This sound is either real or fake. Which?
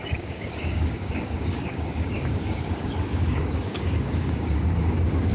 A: fake